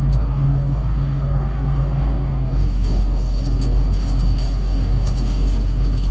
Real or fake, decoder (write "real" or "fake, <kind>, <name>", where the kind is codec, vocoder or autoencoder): fake, codec, DAC